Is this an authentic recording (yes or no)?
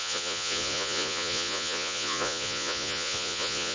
no